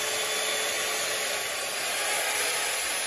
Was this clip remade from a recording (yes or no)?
no